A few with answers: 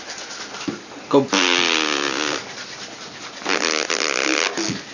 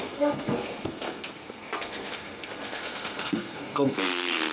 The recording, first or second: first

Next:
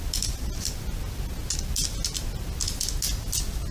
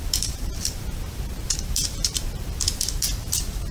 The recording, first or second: first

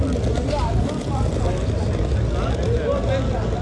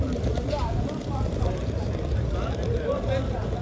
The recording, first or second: first